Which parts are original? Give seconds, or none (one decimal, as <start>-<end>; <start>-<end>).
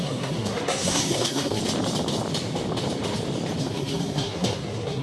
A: 1.6-3.6